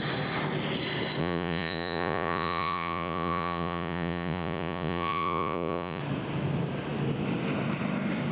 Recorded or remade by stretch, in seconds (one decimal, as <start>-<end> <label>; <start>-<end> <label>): 0.0-1.2 recorded; 1.2-6.0 remade; 6.0-8.3 recorded